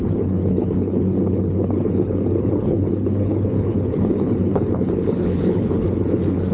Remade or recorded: remade